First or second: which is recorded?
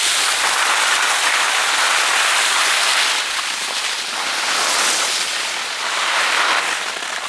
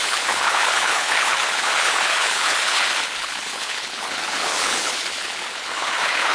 first